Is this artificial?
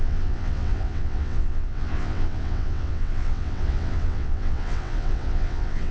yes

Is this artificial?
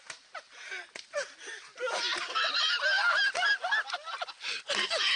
no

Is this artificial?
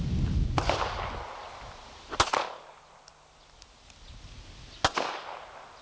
no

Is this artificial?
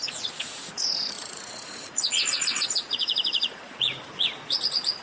yes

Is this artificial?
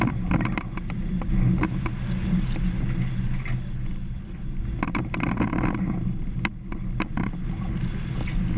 no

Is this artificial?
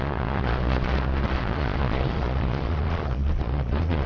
yes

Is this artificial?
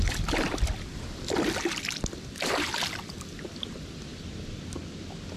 no